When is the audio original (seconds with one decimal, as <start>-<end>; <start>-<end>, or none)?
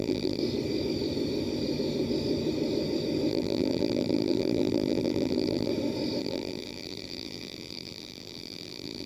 0.4-3.3; 5.7-6.2